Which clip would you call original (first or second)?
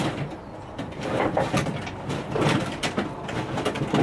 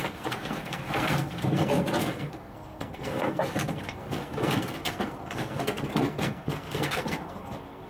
first